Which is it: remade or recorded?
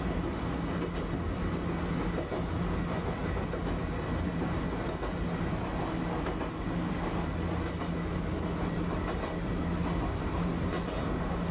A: recorded